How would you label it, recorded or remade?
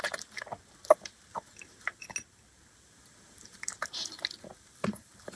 recorded